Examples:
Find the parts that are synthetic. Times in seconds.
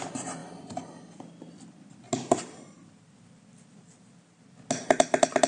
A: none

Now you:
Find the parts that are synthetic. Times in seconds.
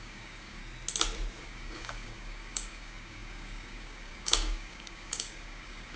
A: 0.0-0.6; 1.4-6.0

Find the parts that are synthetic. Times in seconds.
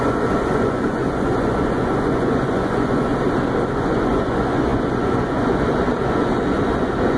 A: 0.0-3.1; 3.7-7.2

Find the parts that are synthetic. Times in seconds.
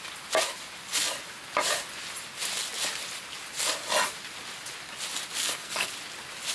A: 5.4-5.9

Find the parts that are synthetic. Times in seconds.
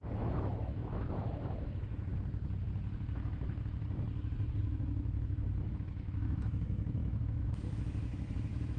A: 0.0-2.1; 4.6-8.8